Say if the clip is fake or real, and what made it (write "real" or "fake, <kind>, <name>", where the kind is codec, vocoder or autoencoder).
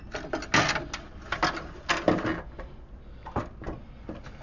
real